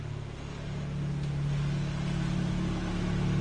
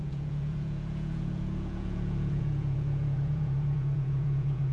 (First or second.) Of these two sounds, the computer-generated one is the second